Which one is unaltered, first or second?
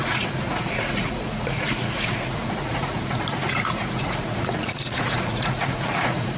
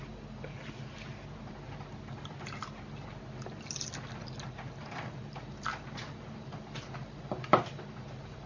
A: second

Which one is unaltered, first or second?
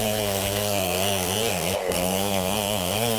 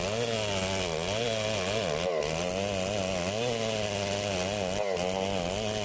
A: second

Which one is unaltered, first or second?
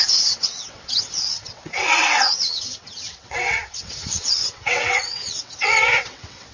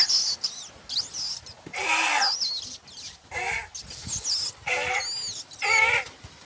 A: second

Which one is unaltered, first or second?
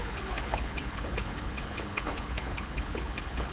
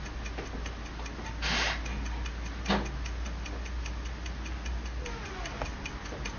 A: second